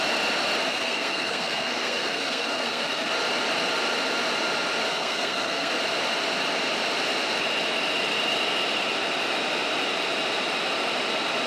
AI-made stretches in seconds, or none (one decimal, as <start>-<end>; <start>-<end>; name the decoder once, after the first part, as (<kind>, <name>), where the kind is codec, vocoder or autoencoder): 0.7-3.1 (codec, SNAC); 4.9-5.7